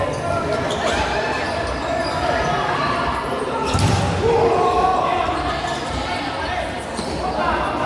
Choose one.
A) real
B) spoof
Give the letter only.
A